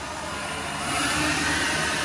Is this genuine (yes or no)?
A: yes